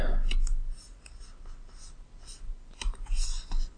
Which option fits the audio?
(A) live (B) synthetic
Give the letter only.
A